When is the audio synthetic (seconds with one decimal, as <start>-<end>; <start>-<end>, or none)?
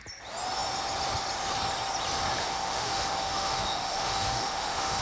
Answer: 2.4-5.0